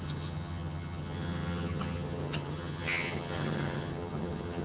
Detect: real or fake fake